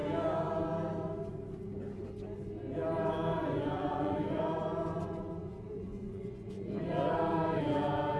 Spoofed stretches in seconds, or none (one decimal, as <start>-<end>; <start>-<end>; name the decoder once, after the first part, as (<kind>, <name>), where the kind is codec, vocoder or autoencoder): 3.3-6.7 (vocoder, Vocos)